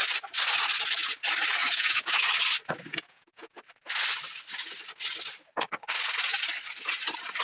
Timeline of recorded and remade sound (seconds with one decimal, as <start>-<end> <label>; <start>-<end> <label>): 0.0-1.6 recorded; 1.6-2.2 remade; 2.2-2.9 recorded; 2.9-3.6 remade; 3.6-7.4 recorded